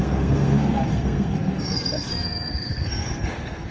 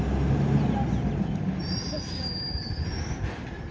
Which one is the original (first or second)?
second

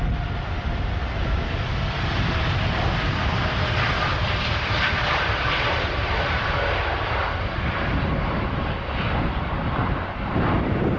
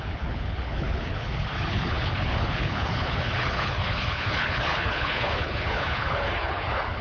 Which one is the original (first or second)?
first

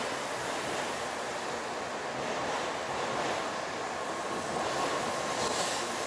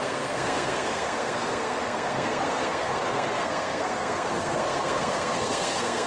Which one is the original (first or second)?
first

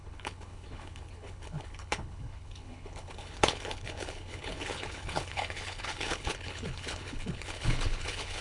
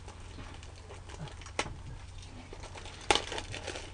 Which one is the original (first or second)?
second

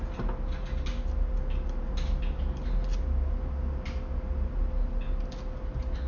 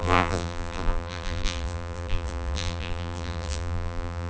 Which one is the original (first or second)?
first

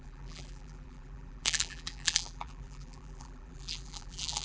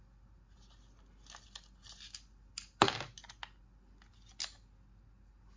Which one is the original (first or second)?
second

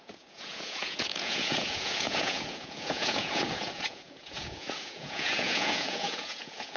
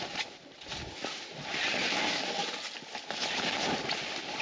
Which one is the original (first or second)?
second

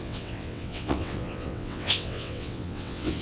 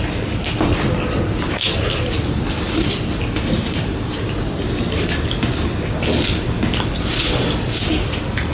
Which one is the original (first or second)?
second